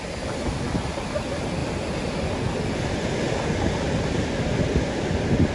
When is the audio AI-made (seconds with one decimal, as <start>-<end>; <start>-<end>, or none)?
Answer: none